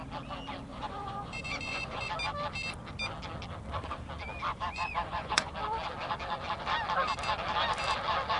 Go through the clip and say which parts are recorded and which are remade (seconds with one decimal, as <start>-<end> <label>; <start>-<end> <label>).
0.0-0.7 recorded; 0.7-2.1 remade; 2.1-4.5 recorded; 4.5-5.5 remade; 5.5-8.4 recorded